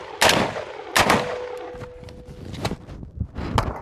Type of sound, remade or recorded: recorded